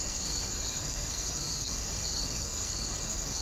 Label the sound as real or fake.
fake